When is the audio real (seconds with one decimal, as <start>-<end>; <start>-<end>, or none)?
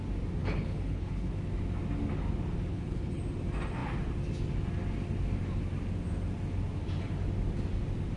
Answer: 0.0-0.4; 1.4-2.7; 3.2-8.2